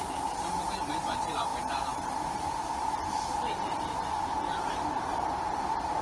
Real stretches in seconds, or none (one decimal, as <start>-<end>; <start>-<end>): 0.0-6.0